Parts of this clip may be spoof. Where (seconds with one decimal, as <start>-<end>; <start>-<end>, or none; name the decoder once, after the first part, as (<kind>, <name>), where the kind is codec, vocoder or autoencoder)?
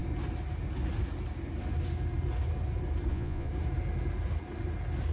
3.1-3.5 (vocoder, Vocos)